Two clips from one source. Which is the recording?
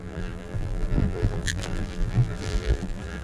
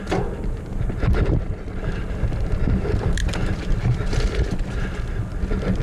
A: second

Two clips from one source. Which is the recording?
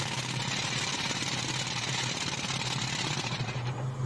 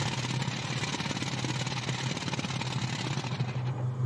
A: second